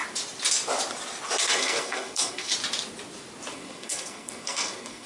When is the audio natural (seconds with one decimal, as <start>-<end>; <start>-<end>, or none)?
0.0-1.4; 2.5-3.5